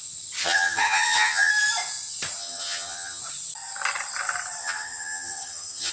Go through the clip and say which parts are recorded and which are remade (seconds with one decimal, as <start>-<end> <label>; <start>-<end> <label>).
0.0-0.4 recorded; 0.4-1.5 remade; 1.5-2.4 recorded; 2.4-3.2 remade; 3.2-4.6 recorded; 4.6-5.9 remade